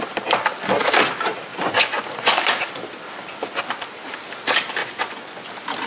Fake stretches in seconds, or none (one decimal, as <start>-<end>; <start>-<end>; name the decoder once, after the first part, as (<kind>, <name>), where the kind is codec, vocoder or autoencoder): 1.5-2.4 (vocoder, Vocos); 4.8-5.5